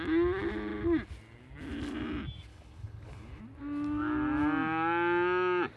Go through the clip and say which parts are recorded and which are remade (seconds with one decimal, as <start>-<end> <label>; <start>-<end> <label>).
0.0-2.5 recorded; 2.5-3.4 remade; 3.4-5.8 recorded